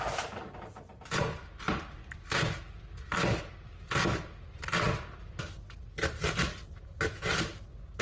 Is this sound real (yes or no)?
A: yes